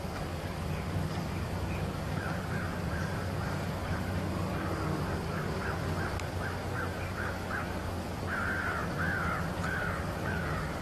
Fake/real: fake